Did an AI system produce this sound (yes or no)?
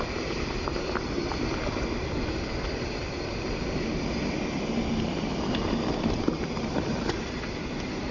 yes